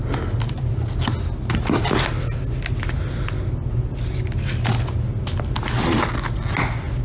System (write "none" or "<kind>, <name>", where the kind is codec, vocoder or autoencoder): none